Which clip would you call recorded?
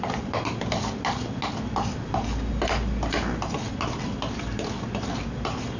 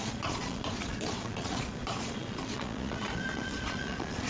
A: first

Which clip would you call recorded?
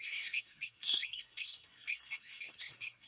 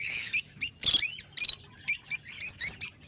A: second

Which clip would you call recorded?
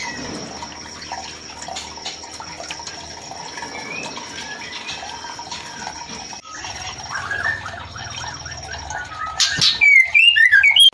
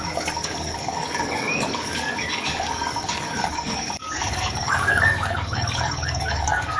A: first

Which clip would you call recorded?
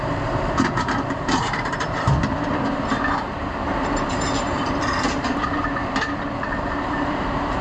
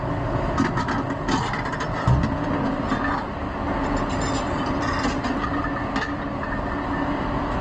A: second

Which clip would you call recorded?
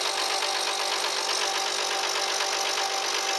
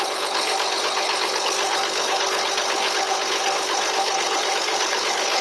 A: first